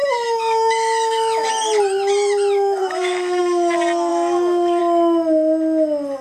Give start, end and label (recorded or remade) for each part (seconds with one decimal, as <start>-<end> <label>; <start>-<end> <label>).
0.0-1.5 remade; 1.5-2.8 recorded; 2.8-3.4 remade; 3.4-4.1 recorded; 4.1-4.8 remade; 4.8-6.2 recorded